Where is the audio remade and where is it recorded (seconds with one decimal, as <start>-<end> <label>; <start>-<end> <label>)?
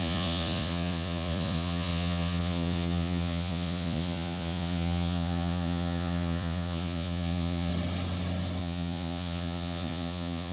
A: 0.0-7.7 remade; 7.7-8.6 recorded; 8.6-10.5 remade